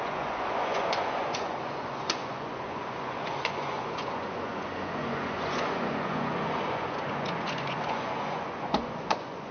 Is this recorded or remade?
remade